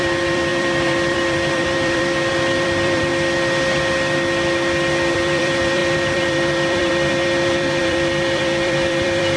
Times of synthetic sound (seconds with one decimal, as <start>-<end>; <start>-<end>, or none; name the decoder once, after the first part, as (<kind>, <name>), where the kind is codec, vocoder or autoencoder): 0.0-3.1 (vocoder, BigVGAN v2); 5.1-9.4